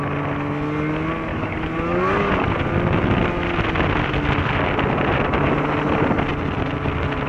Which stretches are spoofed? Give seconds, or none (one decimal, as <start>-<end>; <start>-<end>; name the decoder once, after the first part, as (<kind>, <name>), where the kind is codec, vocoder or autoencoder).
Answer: 1.3-2.3 (codec, DAC)